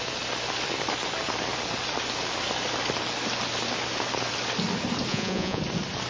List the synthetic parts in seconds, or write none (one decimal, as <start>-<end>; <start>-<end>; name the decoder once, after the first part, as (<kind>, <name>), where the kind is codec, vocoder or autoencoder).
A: 5.1-5.6 (vocoder, Vocos)